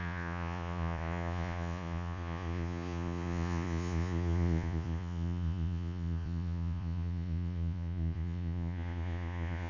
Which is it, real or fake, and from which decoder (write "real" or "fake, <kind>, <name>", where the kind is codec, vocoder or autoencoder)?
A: fake, vocoder, Vocos